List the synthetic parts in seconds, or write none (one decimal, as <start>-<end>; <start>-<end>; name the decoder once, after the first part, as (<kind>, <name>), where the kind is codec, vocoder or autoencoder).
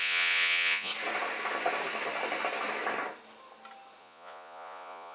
0.0-0.9 (vocoder, Vocos); 4.0-5.1